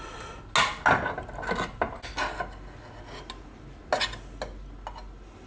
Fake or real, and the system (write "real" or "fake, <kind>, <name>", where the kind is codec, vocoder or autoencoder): real